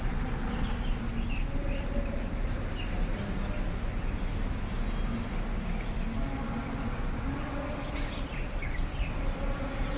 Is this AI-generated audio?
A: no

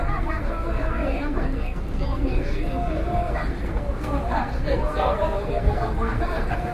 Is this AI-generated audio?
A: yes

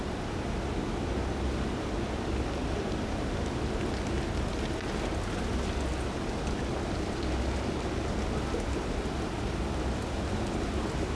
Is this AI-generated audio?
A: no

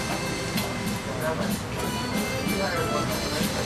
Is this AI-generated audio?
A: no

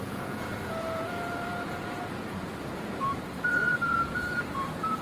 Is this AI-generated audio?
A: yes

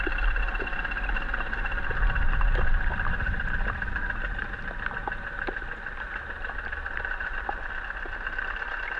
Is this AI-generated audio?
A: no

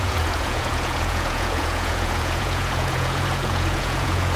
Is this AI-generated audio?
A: yes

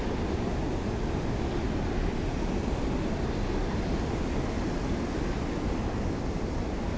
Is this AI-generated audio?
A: no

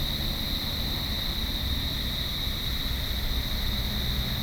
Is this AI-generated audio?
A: no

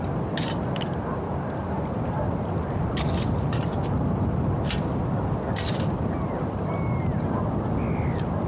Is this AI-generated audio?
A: no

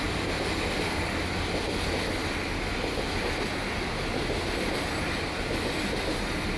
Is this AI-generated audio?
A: no